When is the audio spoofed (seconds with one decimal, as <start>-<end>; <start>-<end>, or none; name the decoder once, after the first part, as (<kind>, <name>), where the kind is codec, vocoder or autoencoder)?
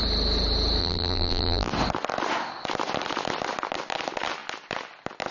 0.8-1.7 (vocoder, BigVGAN v2)